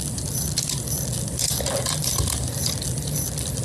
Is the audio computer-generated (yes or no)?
no